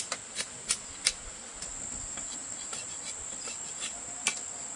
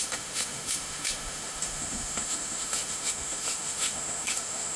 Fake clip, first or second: second